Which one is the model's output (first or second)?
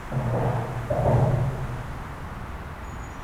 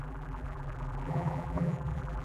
second